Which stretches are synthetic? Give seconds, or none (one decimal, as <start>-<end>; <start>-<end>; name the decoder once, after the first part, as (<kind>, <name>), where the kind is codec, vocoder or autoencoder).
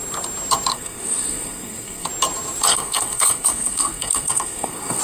0.7-2.1 (codec, SNAC); 2.7-5.0